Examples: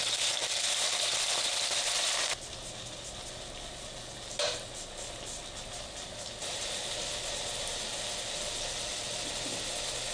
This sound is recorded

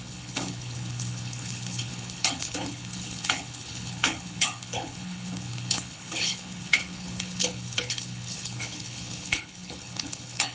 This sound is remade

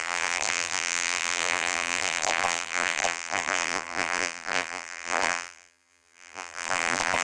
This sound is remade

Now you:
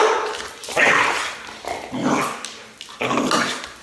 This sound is recorded